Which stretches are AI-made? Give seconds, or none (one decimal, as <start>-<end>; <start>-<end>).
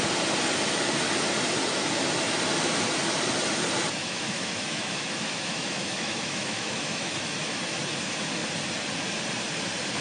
4.0-7.8